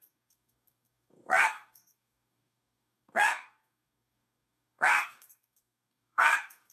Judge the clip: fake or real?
fake